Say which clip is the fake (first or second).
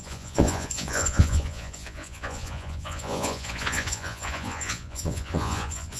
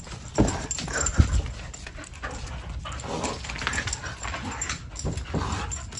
first